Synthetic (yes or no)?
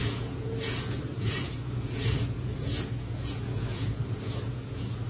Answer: yes